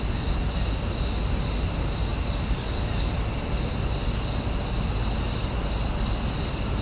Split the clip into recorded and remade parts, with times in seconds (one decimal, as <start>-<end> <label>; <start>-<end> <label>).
0.0-6.8 recorded